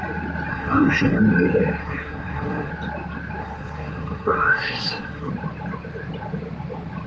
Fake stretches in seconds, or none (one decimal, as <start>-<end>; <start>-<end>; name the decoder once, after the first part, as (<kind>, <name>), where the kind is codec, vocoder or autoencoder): 0.5-1.2 (codec, SNAC); 1.8-2.7; 3.4-5.3